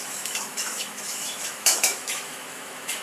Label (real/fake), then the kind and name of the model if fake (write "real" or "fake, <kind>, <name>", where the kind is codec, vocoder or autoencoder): fake, autoencoder, DAC-VAE